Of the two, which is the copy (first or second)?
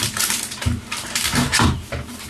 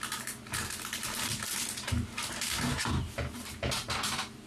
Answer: first